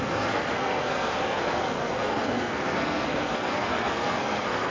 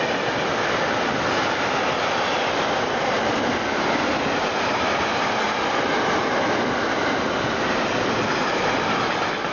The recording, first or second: second